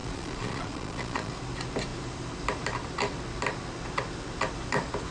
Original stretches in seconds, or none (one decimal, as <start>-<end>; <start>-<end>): 1.3-5.1